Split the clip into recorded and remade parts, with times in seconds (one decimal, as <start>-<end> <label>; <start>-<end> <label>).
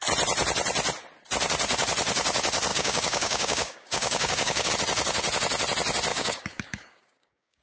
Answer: 0.0-2.7 recorded; 2.7-4.7 remade; 4.7-6.1 recorded; 6.1-7.6 remade